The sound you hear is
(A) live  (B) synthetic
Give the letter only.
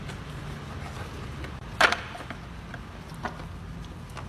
A